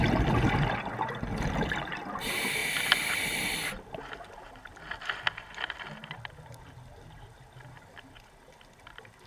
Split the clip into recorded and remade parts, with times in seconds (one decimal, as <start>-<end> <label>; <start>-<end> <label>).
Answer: 0.0-9.3 recorded